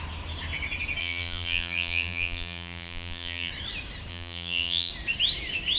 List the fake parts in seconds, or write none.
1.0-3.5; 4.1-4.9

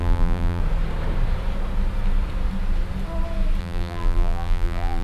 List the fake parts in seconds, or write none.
0.0-0.6; 3.6-5.0

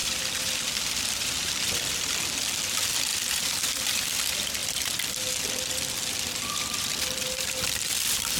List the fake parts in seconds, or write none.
0.0-1.9; 4.6-7.9

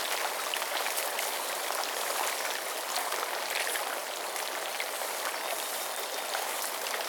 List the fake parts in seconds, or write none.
none

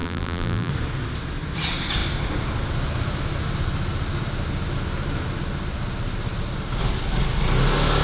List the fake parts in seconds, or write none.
0.0-0.7

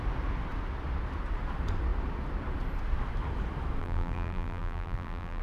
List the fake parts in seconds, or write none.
3.8-5.4

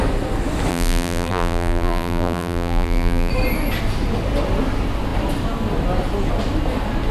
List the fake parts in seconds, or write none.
0.7-3.3

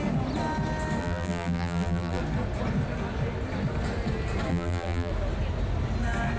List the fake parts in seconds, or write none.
1.0-2.2; 4.5-5.1